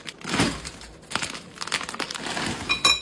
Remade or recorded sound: recorded